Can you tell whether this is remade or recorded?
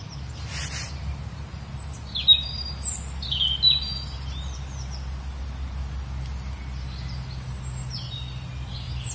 recorded